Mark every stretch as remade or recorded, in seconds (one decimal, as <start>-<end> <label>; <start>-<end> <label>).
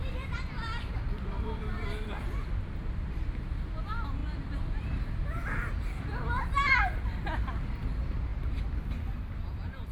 0.0-8.3 remade; 8.3-9.0 recorded; 9.0-9.9 remade